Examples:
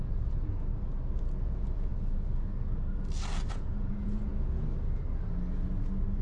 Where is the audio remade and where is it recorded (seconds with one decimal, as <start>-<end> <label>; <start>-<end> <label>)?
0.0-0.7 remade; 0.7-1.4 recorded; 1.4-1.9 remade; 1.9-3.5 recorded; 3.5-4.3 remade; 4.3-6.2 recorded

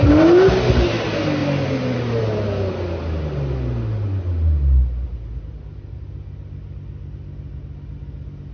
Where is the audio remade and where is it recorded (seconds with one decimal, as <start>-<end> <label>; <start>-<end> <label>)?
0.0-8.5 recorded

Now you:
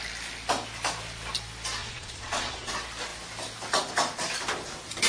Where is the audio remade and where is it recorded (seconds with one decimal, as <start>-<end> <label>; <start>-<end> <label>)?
0.0-1.8 recorded; 1.8-2.7 remade; 2.7-5.1 recorded

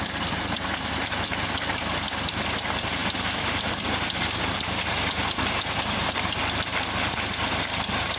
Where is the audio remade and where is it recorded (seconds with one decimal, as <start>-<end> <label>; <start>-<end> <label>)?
0.0-8.2 recorded

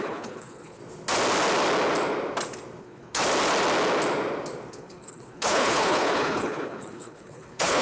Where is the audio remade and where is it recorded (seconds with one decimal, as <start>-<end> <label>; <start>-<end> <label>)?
0.0-0.8 remade; 0.8-2.8 recorded; 2.8-3.2 remade; 3.2-4.7 recorded; 4.7-7.8 remade